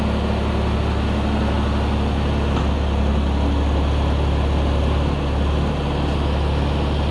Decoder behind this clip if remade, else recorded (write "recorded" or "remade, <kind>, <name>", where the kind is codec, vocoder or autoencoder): recorded